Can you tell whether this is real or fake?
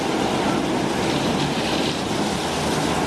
real